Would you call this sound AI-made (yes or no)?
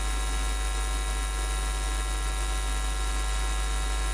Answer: no